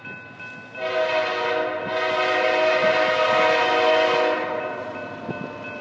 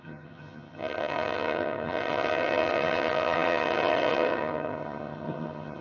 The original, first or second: first